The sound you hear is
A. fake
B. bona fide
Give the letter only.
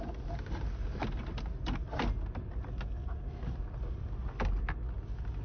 B